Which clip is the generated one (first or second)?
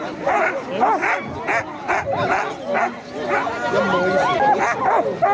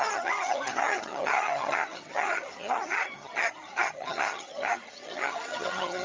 second